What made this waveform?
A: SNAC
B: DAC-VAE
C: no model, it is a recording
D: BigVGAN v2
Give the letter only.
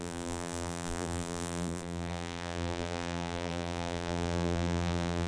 D